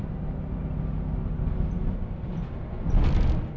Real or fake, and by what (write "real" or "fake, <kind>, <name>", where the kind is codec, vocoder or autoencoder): real